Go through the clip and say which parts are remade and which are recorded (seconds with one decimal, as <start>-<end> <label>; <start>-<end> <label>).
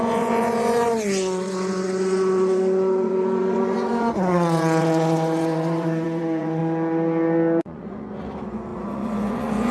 0.0-6.6 remade; 6.6-7.6 recorded; 7.6-9.7 remade